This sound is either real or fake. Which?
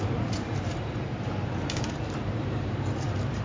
fake